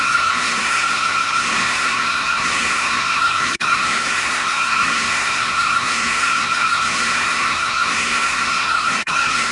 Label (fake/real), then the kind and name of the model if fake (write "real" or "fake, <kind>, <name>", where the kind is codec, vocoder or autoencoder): fake, codec, SNAC